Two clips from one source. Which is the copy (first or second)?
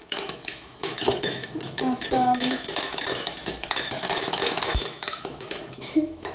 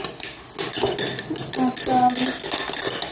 first